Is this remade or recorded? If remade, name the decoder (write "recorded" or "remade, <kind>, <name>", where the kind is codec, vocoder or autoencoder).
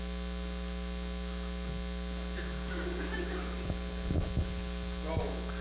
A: recorded